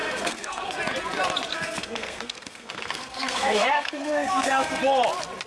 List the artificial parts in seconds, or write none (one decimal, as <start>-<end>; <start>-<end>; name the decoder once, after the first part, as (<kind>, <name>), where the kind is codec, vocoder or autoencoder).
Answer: 0.0-0.8 (codec, SNAC); 1.5-4.8